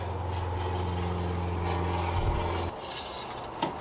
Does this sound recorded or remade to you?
recorded